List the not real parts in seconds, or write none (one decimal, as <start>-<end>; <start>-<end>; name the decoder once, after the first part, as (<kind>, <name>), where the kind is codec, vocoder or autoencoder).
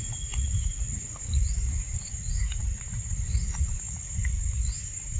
0.0-5.2 (vocoder, Vocos)